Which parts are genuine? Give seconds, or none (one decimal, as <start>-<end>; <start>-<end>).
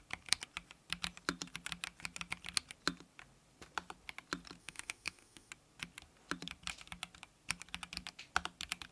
0.0-4.6; 5.5-8.9